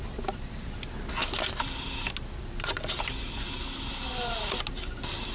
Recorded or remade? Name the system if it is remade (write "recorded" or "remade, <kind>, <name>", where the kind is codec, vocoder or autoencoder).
recorded